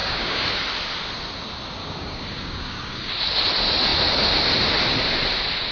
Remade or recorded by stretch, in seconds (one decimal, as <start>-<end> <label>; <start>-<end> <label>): 0.0-0.6 remade; 0.6-1.8 recorded; 1.8-3.1 remade; 3.1-5.7 recorded